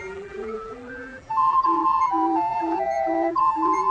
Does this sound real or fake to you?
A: fake